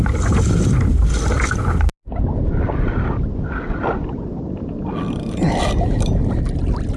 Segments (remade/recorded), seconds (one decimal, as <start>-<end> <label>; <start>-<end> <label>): 0.0-7.0 recorded